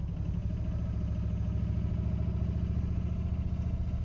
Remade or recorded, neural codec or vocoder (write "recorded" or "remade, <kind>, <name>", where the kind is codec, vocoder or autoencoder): recorded